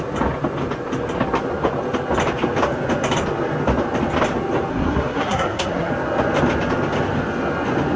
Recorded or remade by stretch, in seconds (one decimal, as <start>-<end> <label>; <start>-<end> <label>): 0.0-4.7 recorded; 4.7-5.9 remade; 5.9-8.0 recorded